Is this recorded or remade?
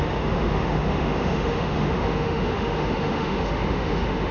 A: remade